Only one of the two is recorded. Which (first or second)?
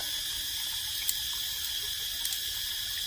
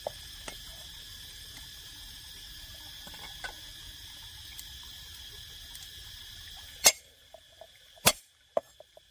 first